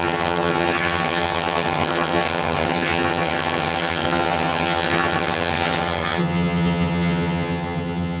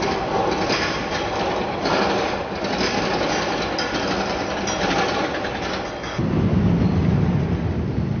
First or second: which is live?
second